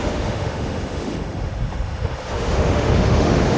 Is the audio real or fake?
fake